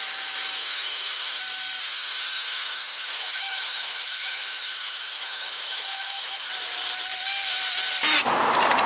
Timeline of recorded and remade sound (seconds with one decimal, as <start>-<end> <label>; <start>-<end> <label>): 0.0-0.6 recorded; 0.6-1.4 remade; 1.4-1.8 recorded; 1.8-6.5 remade; 6.5-8.9 recorded